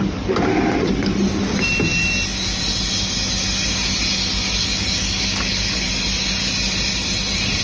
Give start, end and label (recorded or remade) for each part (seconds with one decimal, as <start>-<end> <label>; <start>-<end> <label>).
0.0-4.6 recorded; 4.6-5.9 remade; 5.9-7.6 recorded